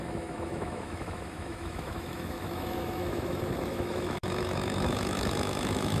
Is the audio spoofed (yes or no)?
yes